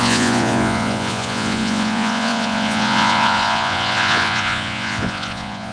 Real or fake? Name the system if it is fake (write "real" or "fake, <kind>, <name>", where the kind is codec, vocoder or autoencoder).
fake, vocoder, Vocos